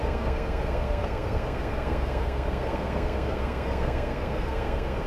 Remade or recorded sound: remade